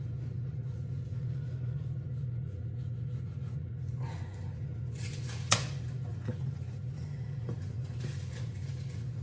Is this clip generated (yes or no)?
yes